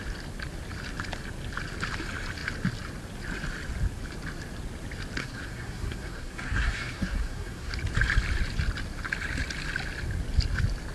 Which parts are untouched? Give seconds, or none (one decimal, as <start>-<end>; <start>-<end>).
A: 0.0-5.2; 7.7-10.9